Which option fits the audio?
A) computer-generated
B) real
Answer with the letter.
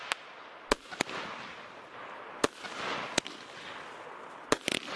B